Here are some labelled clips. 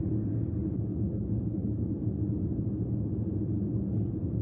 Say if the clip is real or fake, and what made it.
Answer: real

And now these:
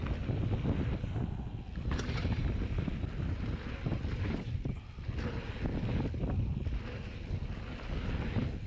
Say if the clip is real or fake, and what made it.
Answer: real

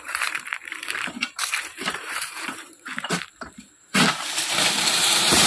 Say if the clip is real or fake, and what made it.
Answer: fake, vocoder, BigVGAN v2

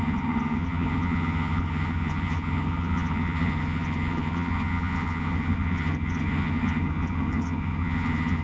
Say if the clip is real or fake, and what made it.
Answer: fake, vocoder, HiFi-GAN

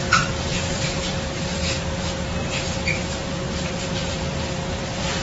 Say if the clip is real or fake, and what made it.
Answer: fake, vocoder, BigVGAN v2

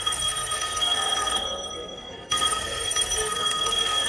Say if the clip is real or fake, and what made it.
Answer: fake, codec, SNAC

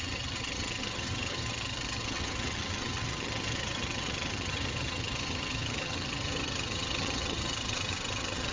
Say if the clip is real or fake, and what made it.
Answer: fake, vocoder, HiFi-GAN